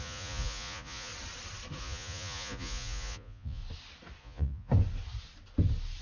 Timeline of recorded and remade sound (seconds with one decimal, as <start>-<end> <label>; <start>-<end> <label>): 0.0-1.1 remade; 1.1-1.8 recorded; 1.8-3.6 remade; 3.6-4.2 recorded; 4.2-4.7 remade; 4.7-6.0 recorded